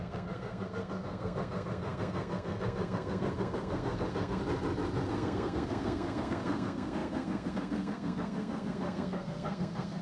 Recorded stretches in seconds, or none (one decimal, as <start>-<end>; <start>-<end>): 4.4-5.1